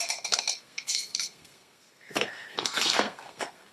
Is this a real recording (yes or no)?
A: no